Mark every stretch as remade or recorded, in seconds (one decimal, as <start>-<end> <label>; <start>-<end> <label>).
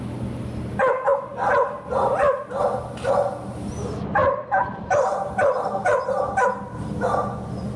0.0-4.2 recorded; 4.2-6.6 remade; 6.6-7.8 recorded